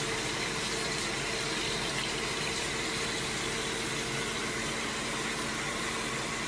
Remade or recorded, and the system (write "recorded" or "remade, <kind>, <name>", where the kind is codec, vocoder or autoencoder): remade, vocoder, BigVGAN v2